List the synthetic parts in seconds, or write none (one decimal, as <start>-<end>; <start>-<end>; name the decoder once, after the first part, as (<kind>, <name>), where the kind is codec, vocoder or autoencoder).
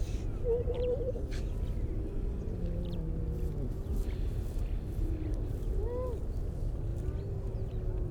none